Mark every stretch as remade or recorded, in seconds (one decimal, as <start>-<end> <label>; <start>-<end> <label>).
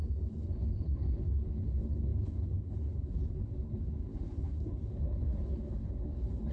0.0-6.5 remade